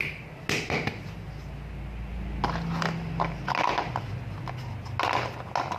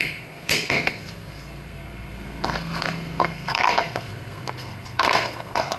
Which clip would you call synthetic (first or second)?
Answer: second